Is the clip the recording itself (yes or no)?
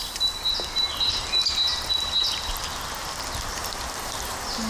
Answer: yes